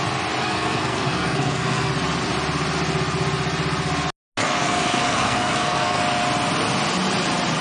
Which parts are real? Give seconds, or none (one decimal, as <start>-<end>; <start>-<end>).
0.0-0.4; 1.9-4.4; 6.0-7.6